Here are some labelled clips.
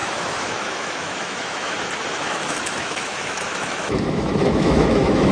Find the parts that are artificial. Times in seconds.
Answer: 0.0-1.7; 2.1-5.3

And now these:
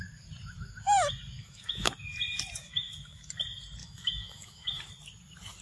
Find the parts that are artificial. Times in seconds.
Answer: 1.4-1.9; 2.6-3.3; 3.8-4.8

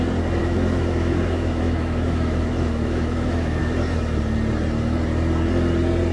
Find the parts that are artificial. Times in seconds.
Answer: 0.4-3.6

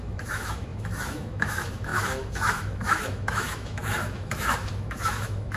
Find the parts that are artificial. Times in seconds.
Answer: 0.0-5.6